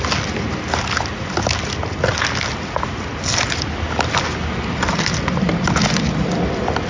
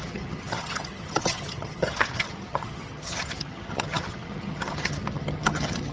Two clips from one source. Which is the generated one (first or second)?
second